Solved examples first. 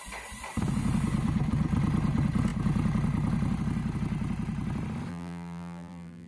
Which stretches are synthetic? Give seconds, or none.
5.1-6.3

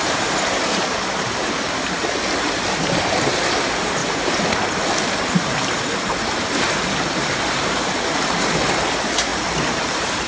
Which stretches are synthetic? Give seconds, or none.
0.0-10.3

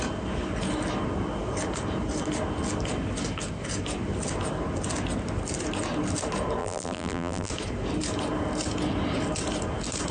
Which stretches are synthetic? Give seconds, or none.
6.6-7.5

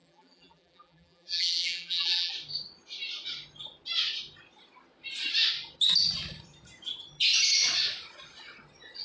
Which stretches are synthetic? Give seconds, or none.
0.0-2.3

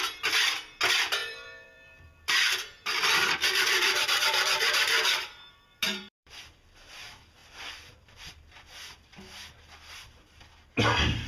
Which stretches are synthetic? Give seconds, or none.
1.2-6.4; 7.4-8.3

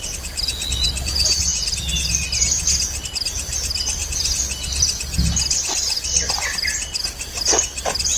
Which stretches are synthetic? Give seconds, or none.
1.5-2.1

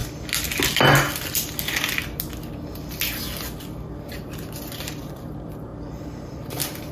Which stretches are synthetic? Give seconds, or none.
4.1-6.9